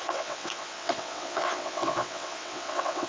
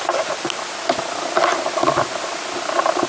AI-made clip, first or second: first